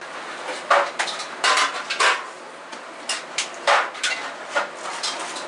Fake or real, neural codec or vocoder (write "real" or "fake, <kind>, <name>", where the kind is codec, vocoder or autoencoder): real